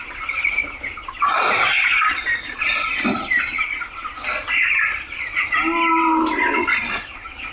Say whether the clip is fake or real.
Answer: real